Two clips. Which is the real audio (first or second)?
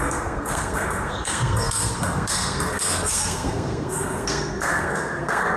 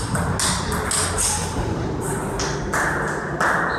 second